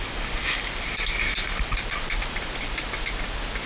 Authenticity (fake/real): real